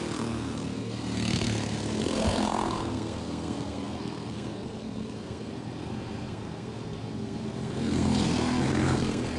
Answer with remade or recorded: remade